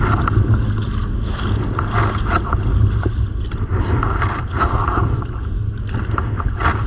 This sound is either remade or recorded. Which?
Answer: recorded